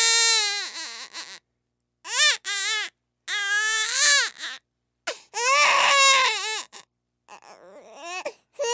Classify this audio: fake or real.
real